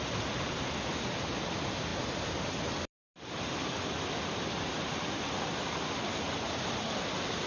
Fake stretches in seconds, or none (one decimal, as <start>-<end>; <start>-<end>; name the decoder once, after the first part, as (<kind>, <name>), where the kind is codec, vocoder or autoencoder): none